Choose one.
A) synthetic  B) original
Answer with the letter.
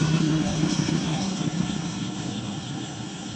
A